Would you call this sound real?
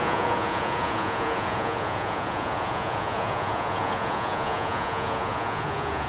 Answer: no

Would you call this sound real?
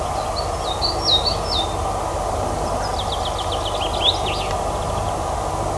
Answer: yes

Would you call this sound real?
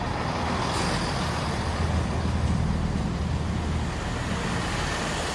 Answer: yes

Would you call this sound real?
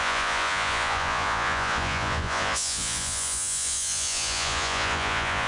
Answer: no